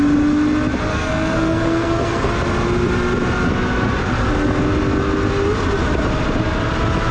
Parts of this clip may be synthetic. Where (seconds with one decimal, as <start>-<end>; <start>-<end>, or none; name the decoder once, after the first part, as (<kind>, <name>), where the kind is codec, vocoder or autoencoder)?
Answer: 0.9-2.3 (codec, SNAC)